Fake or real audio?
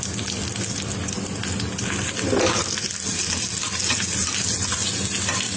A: real